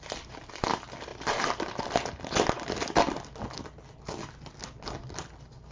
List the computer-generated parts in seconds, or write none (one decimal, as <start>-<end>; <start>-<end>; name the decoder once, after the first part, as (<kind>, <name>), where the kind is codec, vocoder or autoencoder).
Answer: none

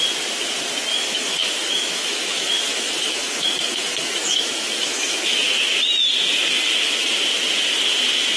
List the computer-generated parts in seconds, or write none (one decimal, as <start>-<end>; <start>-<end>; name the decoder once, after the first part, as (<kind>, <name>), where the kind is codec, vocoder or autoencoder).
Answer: 0.9-5.8 (autoencoder, DAC-VAE)

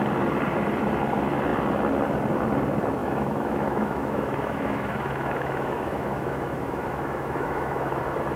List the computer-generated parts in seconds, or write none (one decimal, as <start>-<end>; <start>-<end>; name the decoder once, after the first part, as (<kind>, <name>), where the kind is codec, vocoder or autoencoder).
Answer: 3.0-8.0 (autoencoder, DAC-VAE)

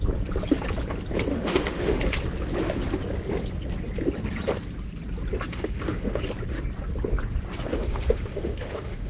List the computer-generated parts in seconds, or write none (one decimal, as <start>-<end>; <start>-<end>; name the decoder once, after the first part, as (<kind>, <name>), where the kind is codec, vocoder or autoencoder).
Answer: 1.3-2.0 (autoencoder, DAC-VAE); 5.5-6.2; 7.7-9.1

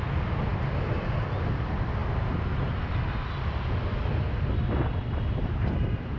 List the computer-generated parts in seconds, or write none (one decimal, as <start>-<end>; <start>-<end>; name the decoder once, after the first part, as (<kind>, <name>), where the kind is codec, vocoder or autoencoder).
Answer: none